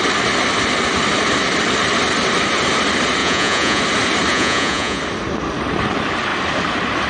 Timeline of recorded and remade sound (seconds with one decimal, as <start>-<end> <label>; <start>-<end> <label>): 0.0-3.2 recorded; 3.2-3.8 remade; 3.8-4.3 recorded; 4.3-5.0 remade; 5.0-7.1 recorded